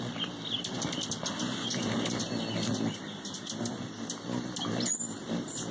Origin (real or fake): real